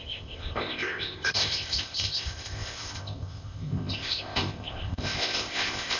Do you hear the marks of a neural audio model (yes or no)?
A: yes